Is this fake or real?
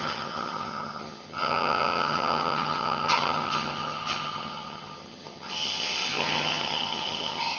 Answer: fake